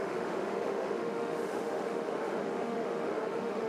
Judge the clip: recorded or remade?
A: remade